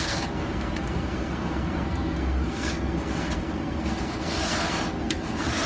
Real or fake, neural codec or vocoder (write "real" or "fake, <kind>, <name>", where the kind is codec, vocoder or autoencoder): fake, codec, SNAC